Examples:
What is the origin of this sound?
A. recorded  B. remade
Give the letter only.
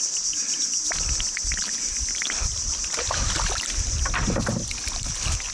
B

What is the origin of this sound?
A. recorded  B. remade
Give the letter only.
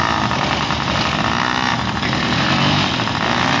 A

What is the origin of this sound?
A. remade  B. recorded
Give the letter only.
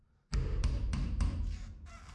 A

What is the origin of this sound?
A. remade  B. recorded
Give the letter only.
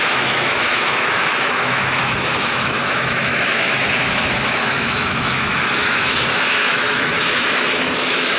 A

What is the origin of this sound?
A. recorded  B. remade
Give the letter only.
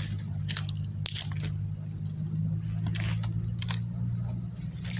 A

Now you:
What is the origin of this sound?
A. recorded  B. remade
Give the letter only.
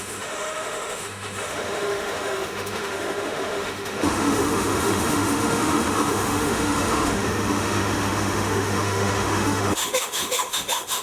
B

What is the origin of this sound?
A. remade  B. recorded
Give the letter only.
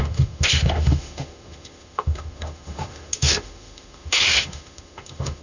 A